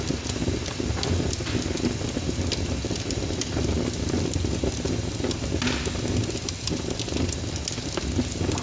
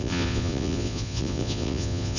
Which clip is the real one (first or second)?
first